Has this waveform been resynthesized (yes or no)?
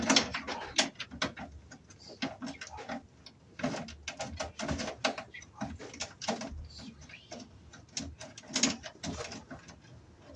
no